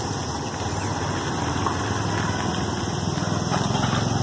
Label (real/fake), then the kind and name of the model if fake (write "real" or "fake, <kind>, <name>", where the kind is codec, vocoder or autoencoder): real